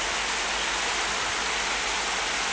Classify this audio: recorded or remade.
recorded